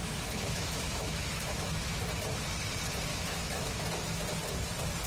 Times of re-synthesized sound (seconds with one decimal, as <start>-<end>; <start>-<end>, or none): 0.0-2.0; 3.1-3.7